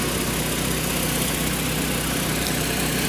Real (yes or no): yes